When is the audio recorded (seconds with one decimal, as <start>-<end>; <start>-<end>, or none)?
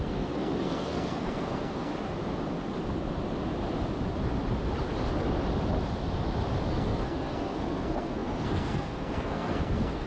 1.9-6.7